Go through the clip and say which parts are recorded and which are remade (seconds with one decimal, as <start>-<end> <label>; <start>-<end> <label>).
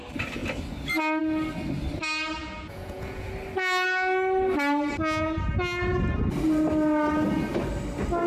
0.0-2.4 recorded; 2.4-3.3 remade; 3.3-8.3 recorded